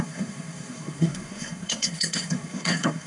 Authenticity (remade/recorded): remade